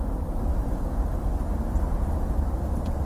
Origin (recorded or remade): remade